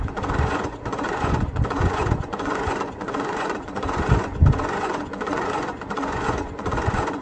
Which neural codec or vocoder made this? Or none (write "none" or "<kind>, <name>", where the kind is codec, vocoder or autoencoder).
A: vocoder, Vocos